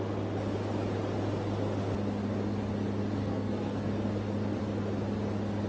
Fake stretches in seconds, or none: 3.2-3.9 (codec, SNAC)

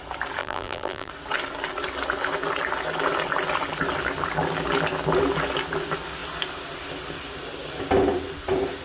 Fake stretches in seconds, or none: 0.4-1.1 (vocoder, BigVGAN v2)

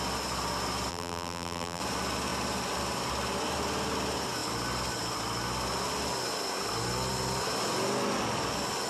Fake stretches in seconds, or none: 0.9-1.8 (vocoder, BigVGAN v2)

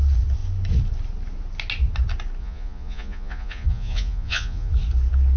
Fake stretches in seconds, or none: 2.4-4.7 (vocoder, Vocos)

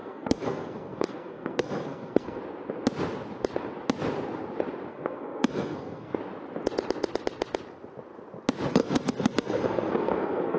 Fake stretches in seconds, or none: 0.0-2.4 (codec, SNAC); 4.9-6.2; 8.7-10.6

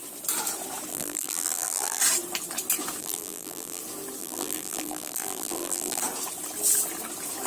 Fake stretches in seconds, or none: 0.9-2.0 (vocoder, BigVGAN v2); 3.0-3.8; 4.2-6.0

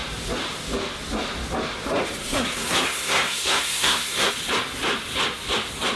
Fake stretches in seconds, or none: 2.2-4.3 (codec, SNAC)